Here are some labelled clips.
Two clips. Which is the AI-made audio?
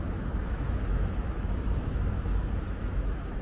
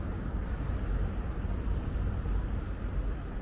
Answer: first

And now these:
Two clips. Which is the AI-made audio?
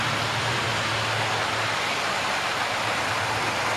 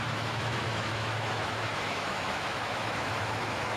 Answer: second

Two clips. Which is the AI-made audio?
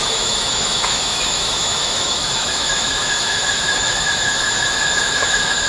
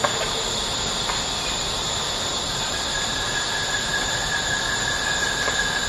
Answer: first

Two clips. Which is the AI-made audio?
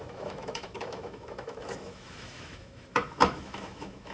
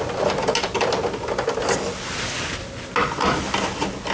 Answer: first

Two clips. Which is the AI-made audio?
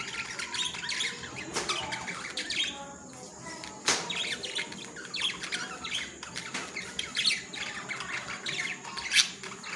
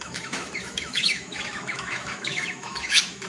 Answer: second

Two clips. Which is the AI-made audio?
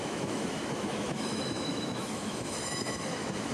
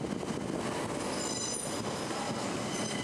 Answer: first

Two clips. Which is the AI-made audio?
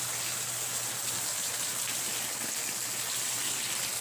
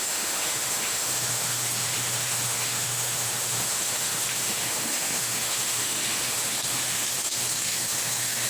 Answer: second